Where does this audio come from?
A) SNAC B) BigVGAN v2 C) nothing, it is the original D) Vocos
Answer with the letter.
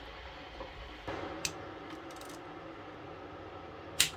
C